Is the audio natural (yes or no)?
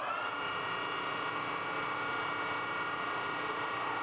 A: yes